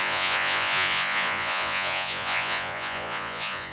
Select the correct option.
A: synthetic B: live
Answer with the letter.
A